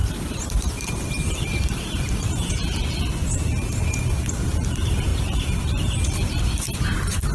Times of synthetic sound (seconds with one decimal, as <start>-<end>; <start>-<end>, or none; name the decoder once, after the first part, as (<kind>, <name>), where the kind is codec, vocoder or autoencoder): 0.0-2.5 (vocoder, BigVGAN v2)